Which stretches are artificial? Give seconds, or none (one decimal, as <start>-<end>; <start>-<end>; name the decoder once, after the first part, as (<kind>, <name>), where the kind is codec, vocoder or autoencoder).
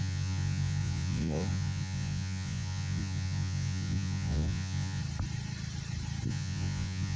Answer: 0.0-5.0 (vocoder, Vocos); 6.3-7.2